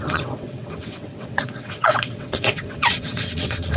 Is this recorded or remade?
remade